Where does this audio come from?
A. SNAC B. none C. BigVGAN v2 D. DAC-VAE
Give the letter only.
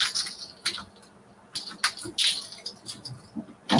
B